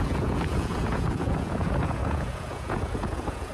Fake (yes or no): yes